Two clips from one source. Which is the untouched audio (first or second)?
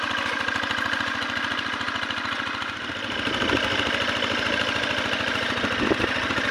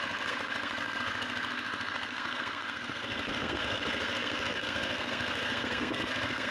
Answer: first